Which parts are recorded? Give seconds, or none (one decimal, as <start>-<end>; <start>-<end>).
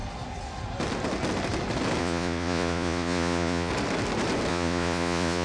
0.0-2.0; 3.7-4.5